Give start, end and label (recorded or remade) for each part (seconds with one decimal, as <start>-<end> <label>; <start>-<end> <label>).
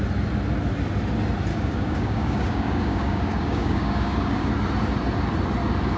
0.0-1.5 recorded; 1.5-4.5 remade; 4.5-6.0 recorded